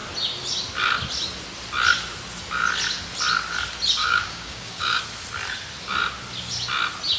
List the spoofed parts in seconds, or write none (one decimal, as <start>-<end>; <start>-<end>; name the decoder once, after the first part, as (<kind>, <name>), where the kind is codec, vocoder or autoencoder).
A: 4.0-5.0 (codec, DAC)